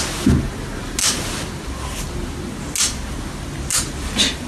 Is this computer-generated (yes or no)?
no